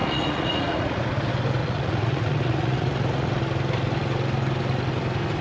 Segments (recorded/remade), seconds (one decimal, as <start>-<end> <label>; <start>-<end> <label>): 0.0-1.0 remade; 1.0-1.6 recorded; 1.6-3.4 remade; 3.4-5.4 recorded